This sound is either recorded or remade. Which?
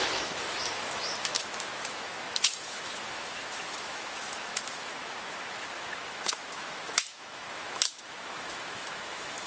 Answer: remade